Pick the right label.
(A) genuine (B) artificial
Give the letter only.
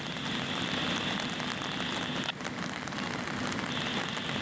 A